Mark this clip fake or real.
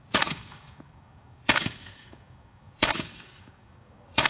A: fake